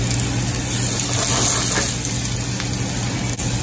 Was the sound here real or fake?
real